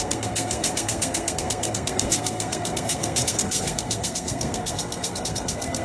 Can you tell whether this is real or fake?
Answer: fake